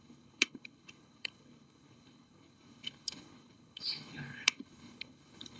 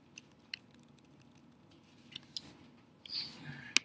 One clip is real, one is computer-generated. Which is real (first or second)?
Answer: second